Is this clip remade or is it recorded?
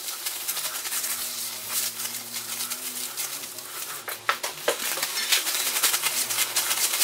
remade